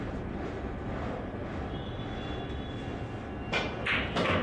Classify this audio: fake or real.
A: real